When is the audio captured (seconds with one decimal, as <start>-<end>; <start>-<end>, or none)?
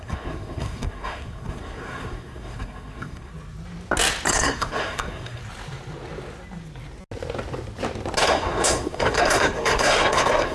3.3-4.3; 5.4-8.2